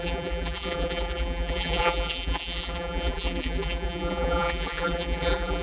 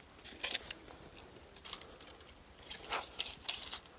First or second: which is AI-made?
first